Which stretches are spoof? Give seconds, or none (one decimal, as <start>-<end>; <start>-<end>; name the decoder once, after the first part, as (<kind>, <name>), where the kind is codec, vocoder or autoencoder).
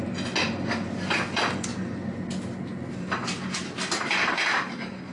none